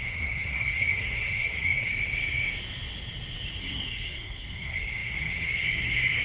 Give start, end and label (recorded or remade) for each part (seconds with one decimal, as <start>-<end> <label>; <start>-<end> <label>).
0.0-1.9 remade; 1.9-3.6 recorded; 3.6-6.2 remade